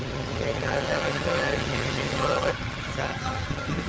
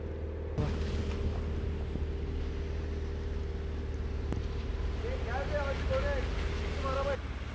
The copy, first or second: first